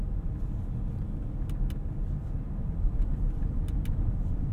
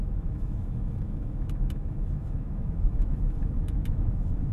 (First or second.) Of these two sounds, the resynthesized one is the second